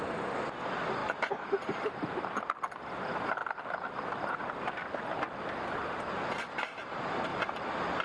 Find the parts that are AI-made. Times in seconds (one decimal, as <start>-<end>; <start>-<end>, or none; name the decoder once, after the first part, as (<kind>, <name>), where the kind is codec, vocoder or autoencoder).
none